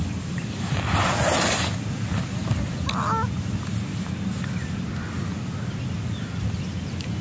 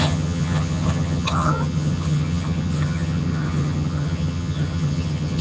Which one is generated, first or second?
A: second